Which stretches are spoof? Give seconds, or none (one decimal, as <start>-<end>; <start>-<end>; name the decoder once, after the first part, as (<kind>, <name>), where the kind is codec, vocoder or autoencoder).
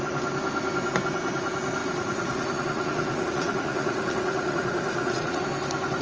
1.8-5.4 (vocoder, Vocos)